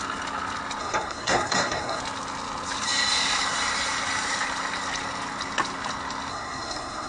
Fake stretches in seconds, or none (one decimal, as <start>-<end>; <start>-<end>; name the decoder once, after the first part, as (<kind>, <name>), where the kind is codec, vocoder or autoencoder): 0.8-2.0 (codec, SNAC); 6.3-7.1